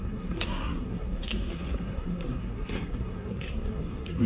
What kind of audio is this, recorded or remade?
remade